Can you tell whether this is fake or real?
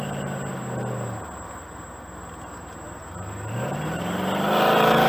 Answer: fake